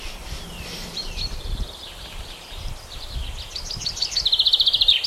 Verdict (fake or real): fake